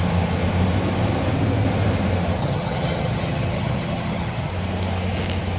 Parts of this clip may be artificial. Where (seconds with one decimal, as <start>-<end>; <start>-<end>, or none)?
2.4-4.5